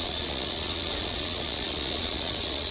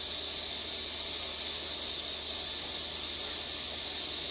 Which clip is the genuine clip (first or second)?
second